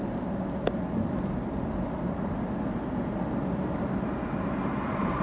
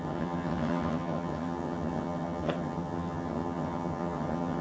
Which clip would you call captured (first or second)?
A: first